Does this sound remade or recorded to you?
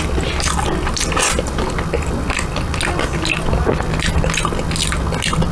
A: recorded